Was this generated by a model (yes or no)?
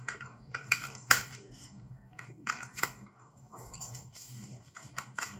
yes